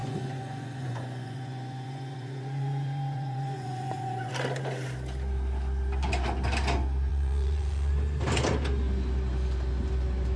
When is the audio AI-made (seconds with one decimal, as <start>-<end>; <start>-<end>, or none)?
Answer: 0.0-4.3; 7.1-7.9